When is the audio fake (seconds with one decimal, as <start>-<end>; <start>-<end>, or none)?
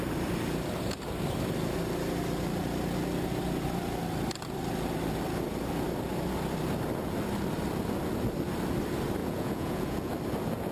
9.2-10.1